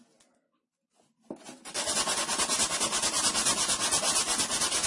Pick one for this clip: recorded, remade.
recorded